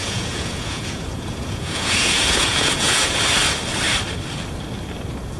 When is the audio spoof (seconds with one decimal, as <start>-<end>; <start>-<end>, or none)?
0.0-3.2